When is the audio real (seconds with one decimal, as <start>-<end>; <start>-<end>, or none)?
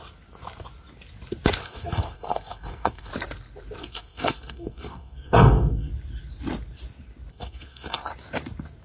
0.0-1.6; 3.1-3.8; 5.9-7.3; 8.1-8.8